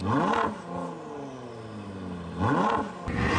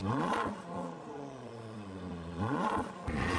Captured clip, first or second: first